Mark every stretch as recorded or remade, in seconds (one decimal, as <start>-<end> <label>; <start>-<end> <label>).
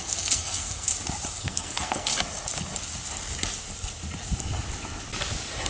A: 0.0-0.9 remade; 0.9-1.4 recorded; 1.4-2.1 remade; 2.1-5.7 recorded